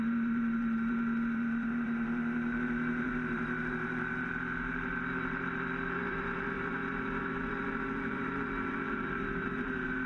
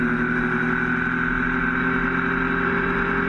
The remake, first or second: first